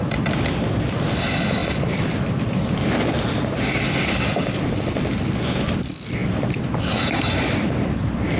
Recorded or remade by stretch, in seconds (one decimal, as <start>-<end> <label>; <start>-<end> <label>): 0.0-8.4 recorded